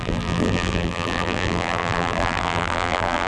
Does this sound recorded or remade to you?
remade